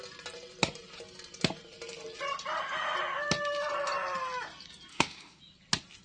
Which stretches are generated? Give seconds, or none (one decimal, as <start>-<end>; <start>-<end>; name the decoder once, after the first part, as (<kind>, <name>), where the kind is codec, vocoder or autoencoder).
4.9-5.4 (autoencoder, DAC-VAE)

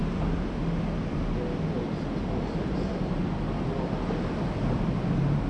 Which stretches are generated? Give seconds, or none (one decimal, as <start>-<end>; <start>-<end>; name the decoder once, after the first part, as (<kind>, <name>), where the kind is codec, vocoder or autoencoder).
none